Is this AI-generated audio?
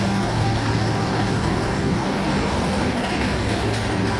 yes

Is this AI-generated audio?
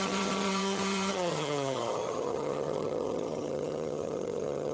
yes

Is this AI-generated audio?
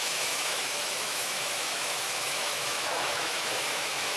yes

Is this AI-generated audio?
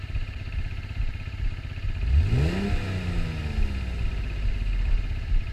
no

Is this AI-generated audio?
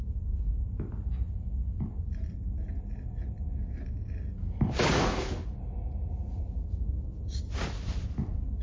no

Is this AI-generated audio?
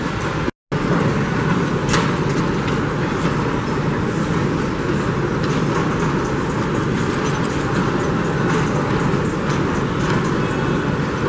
no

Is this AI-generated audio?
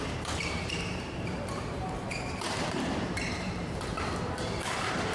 yes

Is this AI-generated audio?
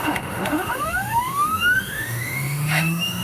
yes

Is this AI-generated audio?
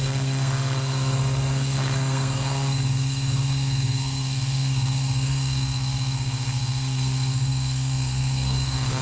yes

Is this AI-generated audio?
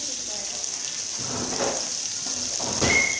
no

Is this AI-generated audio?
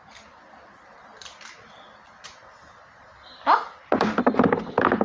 no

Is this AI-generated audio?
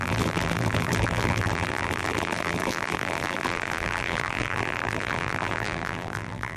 yes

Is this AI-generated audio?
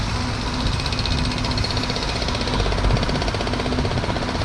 no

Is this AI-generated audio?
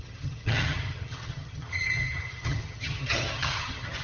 yes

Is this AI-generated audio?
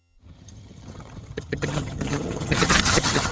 yes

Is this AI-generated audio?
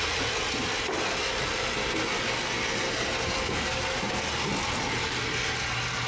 no